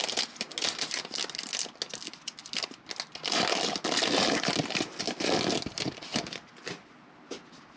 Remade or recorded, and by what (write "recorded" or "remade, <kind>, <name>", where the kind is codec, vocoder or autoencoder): recorded